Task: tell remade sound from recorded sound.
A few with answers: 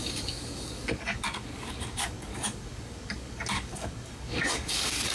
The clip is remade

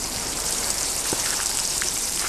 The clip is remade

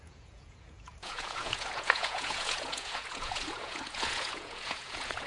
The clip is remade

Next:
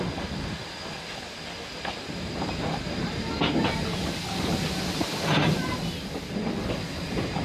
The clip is recorded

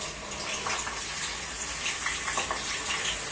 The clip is recorded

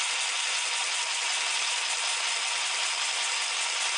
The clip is recorded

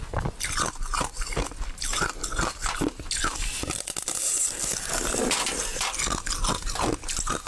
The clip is recorded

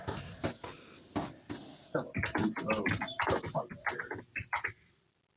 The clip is recorded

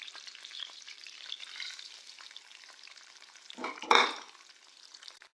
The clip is remade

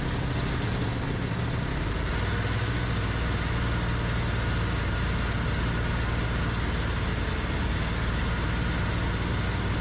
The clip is recorded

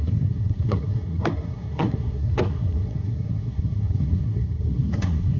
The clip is remade